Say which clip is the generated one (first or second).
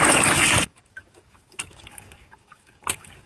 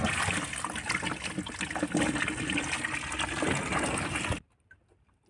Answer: first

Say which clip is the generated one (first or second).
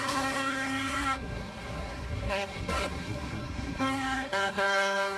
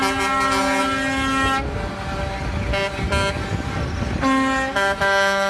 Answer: first